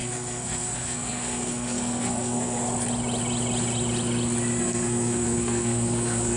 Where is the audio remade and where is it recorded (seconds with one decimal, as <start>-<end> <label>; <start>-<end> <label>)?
0.0-2.6 remade; 2.6-4.6 recorded; 4.6-6.4 remade